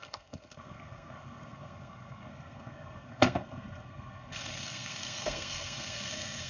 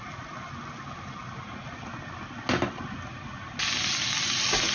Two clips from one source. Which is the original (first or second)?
second